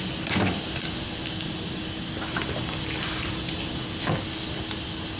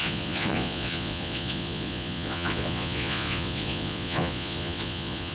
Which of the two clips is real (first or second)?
first